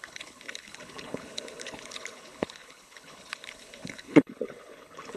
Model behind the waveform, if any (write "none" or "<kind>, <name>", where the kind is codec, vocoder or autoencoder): codec, HILCodec